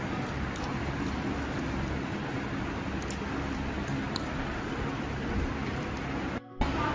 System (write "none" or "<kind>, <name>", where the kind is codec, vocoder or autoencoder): none